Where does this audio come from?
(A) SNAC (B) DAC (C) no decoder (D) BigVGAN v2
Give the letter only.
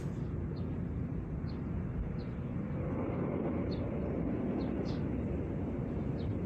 C